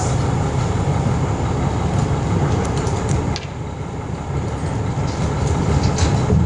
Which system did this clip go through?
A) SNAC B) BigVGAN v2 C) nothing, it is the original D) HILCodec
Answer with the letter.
C